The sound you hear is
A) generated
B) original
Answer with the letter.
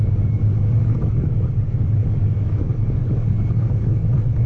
A